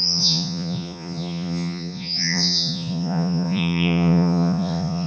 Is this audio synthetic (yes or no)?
yes